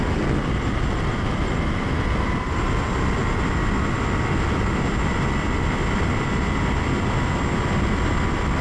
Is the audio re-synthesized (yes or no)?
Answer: no